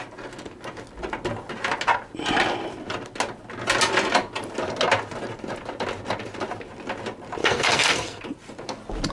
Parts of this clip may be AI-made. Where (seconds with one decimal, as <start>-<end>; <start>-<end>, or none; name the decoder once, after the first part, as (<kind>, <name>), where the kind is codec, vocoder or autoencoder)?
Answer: 7.4-8.2 (codec, SNAC)